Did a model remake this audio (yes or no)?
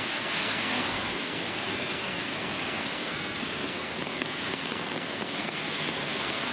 yes